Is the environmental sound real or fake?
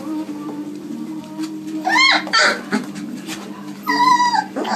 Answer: fake